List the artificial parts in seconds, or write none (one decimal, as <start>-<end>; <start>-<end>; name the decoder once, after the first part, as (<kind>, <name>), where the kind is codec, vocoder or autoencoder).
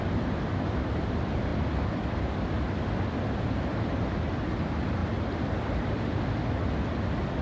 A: 0.0-1.5 (vocoder, BigVGAN v2); 4.5-5.0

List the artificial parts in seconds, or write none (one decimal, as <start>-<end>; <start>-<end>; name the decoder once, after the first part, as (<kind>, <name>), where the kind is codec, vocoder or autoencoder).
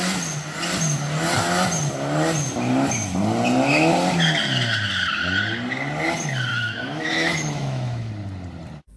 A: 6.5-8.1 (autoencoder, DAC-VAE)